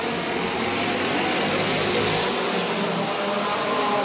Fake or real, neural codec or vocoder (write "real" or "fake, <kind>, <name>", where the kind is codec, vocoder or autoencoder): real